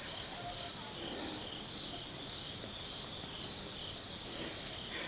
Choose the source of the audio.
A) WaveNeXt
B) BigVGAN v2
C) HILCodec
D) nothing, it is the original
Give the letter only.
D